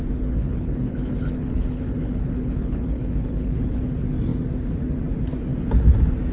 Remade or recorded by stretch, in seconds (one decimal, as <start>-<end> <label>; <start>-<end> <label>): 0.0-0.4 recorded; 0.4-3.8 remade; 3.8-6.3 recorded